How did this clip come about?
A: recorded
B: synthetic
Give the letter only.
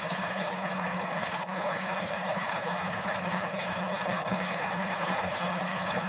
B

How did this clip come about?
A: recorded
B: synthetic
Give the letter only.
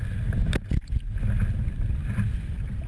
A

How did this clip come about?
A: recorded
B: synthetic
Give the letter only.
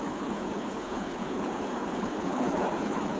B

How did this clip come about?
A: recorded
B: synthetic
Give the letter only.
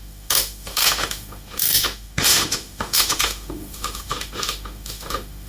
B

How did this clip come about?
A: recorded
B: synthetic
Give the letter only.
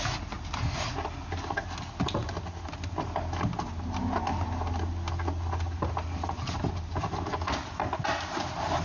A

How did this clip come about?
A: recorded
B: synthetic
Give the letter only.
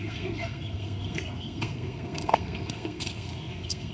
B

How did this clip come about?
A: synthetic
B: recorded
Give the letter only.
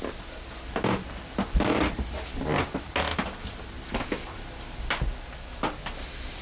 B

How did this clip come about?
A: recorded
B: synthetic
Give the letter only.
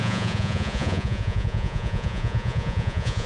B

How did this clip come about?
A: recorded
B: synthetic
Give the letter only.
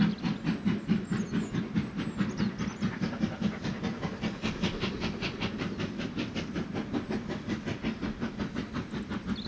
A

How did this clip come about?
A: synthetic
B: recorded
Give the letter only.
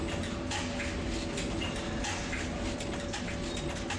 B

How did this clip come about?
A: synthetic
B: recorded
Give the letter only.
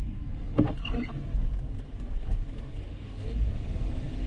A